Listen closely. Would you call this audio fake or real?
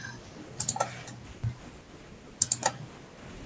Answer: real